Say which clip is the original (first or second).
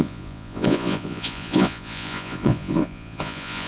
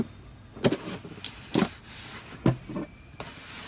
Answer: second